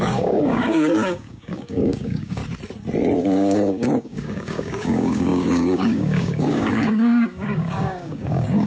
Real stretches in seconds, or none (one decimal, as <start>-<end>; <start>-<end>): 2.4-3.2